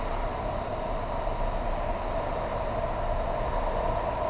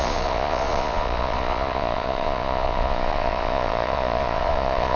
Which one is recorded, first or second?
first